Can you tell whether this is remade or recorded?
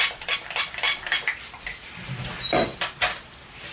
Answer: recorded